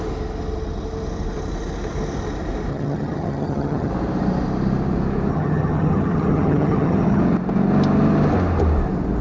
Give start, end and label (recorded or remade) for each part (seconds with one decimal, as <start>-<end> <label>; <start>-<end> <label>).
0.0-2.7 recorded; 2.7-3.9 remade; 3.9-5.3 recorded; 5.3-7.2 remade; 7.2-9.2 recorded

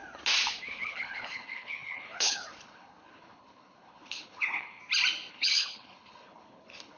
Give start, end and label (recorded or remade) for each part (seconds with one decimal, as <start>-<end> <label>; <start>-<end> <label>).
0.0-0.6 recorded; 0.6-4.8 remade; 4.8-5.3 recorded; 5.3-7.0 remade

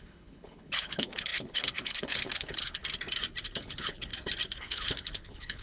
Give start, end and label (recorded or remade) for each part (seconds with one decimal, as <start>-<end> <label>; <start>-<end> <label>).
0.0-2.8 remade; 2.8-3.6 recorded; 3.6-4.1 remade; 4.1-4.6 recorded; 4.6-5.6 remade